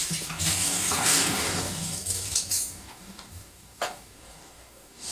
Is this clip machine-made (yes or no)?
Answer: yes